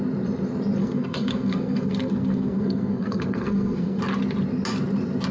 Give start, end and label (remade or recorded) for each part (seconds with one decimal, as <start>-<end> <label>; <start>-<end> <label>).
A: 0.0-0.8 recorded; 0.8-4.0 remade; 4.0-5.3 recorded